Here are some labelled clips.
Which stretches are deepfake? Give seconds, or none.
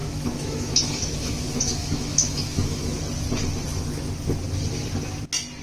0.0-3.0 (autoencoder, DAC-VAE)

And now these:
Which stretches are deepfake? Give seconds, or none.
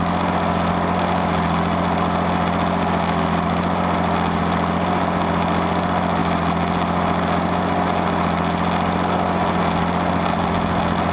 none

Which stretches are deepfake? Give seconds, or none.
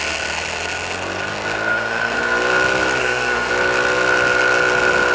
1.7-2.2 (codec, SNAC); 3.0-3.5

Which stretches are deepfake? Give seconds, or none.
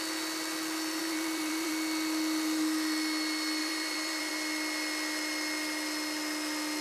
1.0-1.7 (vocoder, BigVGAN v2); 3.6-4.3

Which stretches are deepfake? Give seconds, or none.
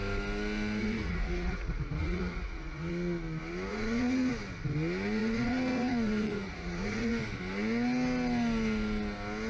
0.8-2.9 (vocoder, Vocos); 3.7-4.3; 5.2-7.1